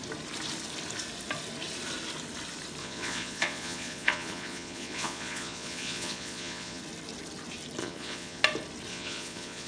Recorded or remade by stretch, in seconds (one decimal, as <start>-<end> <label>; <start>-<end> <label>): 0.0-2.8 recorded; 2.8-6.8 remade; 6.8-7.8 recorded; 7.8-8.4 remade; 8.4-8.9 recorded; 8.9-9.7 remade